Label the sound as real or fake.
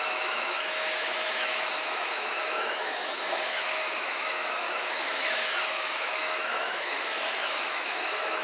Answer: fake